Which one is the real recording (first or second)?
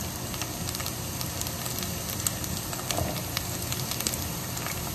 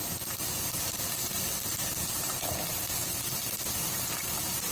first